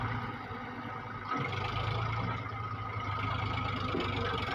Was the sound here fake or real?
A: real